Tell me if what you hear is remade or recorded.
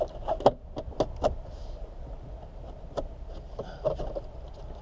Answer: recorded